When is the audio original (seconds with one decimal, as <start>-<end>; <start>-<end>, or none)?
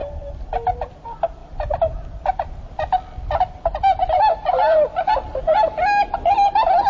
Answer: 0.0-6.9